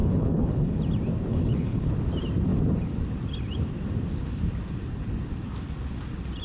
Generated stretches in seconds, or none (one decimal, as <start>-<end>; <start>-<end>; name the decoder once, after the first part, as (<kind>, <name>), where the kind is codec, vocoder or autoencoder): 0.0-0.8 (codec, HILCodec); 1.3-1.9